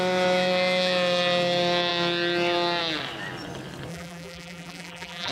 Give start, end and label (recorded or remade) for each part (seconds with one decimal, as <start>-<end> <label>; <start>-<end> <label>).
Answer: 0.0-3.9 recorded; 3.9-5.3 remade